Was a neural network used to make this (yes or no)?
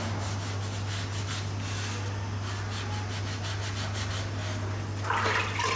no